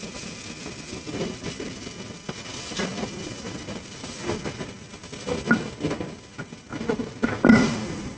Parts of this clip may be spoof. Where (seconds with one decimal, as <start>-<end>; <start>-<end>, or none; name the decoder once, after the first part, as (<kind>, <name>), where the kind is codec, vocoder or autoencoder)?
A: none